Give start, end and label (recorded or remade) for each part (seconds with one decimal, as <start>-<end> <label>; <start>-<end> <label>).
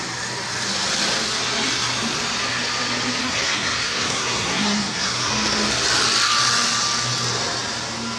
0.0-3.2 recorded; 3.2-5.3 remade; 5.3-8.2 recorded